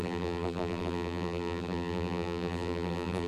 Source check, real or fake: fake